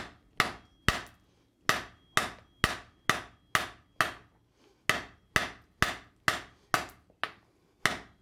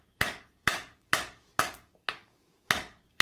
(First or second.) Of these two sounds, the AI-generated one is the second